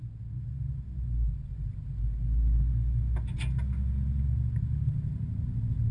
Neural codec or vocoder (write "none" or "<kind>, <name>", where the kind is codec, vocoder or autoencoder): none